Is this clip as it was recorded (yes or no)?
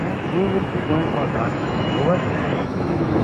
no